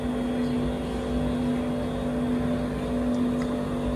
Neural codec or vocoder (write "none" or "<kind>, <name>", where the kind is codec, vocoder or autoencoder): none